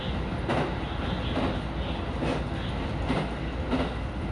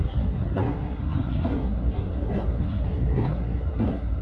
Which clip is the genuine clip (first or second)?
first